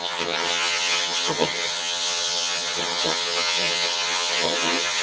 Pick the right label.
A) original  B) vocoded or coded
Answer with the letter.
B